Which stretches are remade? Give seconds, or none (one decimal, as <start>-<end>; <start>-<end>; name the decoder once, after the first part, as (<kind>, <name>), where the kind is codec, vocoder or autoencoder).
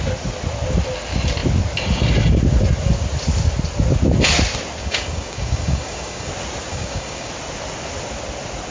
4.8-6.3 (codec, DAC); 6.7-7.3